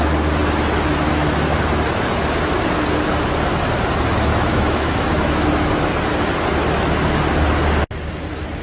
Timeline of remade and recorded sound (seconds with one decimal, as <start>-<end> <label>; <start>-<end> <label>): 0.0-4.3 recorded; 4.3-5.5 remade; 5.5-8.6 recorded